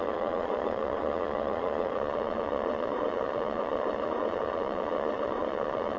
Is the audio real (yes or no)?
no